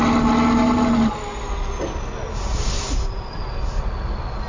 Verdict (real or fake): real